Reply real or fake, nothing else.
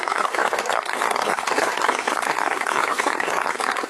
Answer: fake